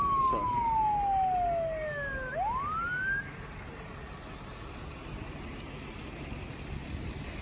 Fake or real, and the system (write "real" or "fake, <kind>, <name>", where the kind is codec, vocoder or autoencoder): real